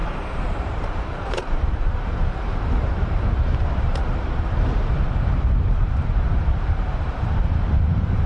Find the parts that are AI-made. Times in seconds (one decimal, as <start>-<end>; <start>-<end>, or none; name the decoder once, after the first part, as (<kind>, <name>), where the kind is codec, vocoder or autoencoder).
0.0-8.3 (vocoder, BigVGAN v2)